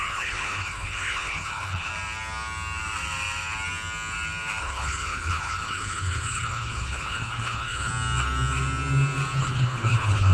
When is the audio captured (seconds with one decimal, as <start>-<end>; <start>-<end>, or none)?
1.9-4.6; 7.9-9.4